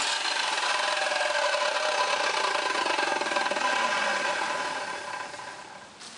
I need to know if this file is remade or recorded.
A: recorded